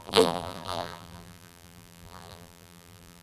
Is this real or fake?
fake